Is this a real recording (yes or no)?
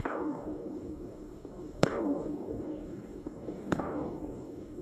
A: no